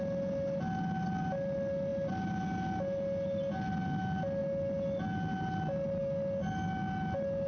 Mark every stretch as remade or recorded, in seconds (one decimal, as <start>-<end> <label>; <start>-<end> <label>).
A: 0.0-7.5 recorded